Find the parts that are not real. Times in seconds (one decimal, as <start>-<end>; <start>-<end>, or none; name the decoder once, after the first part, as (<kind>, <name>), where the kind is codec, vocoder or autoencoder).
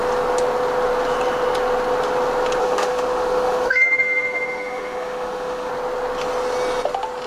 2.6-5.7 (autoencoder, DAC-VAE)